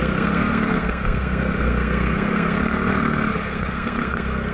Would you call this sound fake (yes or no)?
yes